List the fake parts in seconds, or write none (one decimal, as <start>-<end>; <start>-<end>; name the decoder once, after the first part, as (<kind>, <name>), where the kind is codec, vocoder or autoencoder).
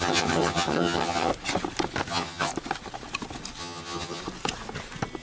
0.0-1.3 (vocoder, HiFi-GAN); 2.1-2.5; 3.6-4.2